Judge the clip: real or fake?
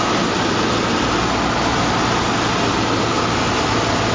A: real